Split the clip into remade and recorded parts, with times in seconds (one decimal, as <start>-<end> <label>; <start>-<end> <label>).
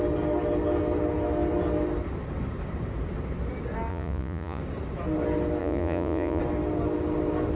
0.0-3.9 recorded; 3.9-4.6 remade; 4.6-5.6 recorded; 5.6-6.4 remade; 6.4-7.5 recorded